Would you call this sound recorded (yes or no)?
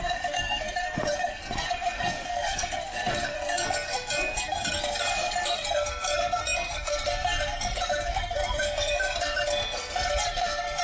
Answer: no